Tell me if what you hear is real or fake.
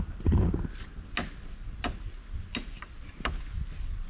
real